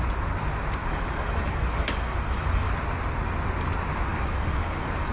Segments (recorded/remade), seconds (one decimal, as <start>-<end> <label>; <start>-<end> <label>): 0.0-0.8 recorded; 0.8-2.7 remade; 2.7-4.1 recorded; 4.1-5.1 remade